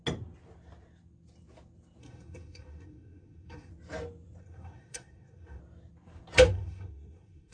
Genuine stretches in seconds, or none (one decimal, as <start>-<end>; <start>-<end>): 0.0-2.0; 3.7-4.4; 5.6-6.5